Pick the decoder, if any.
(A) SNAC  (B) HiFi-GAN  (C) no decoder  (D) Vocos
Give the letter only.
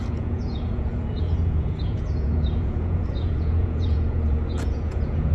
D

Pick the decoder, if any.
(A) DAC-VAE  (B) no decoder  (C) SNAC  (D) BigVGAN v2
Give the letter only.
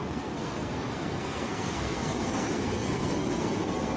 C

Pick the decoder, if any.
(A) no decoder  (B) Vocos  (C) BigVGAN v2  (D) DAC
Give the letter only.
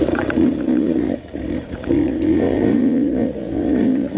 B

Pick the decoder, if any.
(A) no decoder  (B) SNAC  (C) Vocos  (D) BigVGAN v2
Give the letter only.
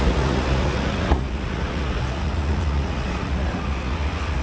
C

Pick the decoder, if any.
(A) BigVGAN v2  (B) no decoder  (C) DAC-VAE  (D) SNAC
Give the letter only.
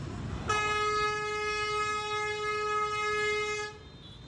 B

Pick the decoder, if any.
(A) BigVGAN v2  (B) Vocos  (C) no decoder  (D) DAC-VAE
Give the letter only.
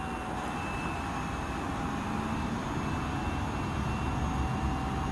C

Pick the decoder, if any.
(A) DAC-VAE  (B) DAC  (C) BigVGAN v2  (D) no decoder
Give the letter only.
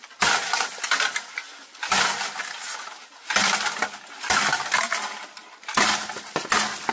D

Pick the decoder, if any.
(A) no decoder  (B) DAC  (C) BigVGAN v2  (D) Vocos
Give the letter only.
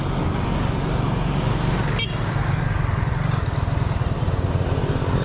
A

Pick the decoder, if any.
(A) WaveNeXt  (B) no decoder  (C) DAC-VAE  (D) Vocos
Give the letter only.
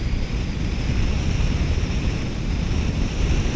B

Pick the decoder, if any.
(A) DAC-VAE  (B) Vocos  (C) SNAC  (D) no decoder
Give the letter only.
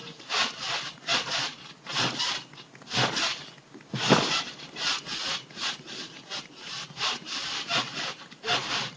D